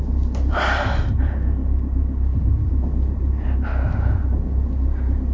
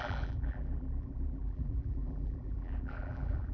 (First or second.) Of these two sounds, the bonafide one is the first